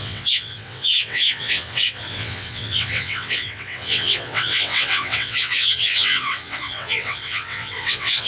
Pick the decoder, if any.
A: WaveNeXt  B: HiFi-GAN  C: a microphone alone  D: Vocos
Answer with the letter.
A